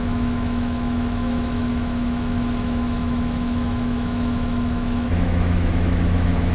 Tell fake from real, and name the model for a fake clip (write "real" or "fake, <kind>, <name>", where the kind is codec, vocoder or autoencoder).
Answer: fake, autoencoder, DAC-VAE